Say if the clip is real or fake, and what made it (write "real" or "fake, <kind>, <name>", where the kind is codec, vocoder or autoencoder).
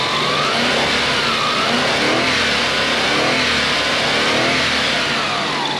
real